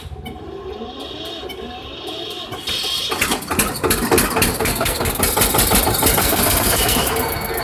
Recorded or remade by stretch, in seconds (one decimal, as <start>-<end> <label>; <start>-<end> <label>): 0.0-4.5 recorded; 4.5-5.2 remade; 5.2-6.2 recorded; 6.2-7.6 remade